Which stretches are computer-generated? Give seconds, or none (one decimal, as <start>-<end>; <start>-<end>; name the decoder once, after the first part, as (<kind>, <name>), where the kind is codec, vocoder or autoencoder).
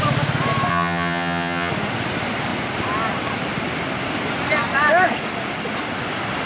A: 0.7-1.7 (vocoder, HiFi-GAN)